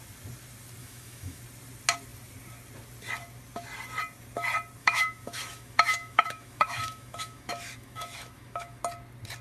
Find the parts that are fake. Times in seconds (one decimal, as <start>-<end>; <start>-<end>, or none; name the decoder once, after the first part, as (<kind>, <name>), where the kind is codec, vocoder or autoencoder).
0.8-1.4 (autoencoder, DAC-VAE); 4.8-8.8

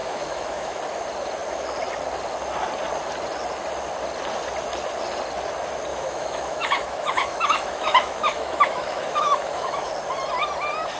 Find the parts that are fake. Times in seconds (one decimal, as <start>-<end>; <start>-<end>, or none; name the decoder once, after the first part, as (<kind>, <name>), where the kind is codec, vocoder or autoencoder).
0.0-0.8 (autoencoder, DAC-VAE); 5.9-9.9